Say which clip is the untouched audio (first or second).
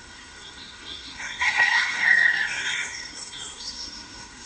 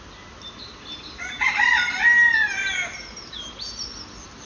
second